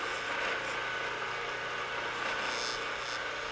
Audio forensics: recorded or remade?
recorded